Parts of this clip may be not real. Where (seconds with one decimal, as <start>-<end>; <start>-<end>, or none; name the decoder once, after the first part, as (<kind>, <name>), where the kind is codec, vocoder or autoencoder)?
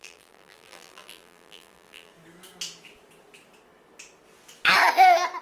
0.0-2.1 (vocoder, BigVGAN v2)